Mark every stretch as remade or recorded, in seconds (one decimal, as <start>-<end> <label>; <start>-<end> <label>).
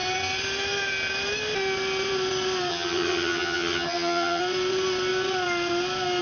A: 0.0-2.7 recorded; 2.7-4.4 remade; 4.4-6.2 recorded